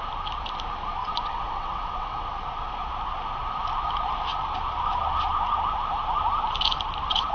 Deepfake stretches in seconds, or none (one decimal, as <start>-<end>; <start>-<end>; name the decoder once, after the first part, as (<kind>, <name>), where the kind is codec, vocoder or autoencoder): 1.0-2.3 (vocoder, WaveNeXt)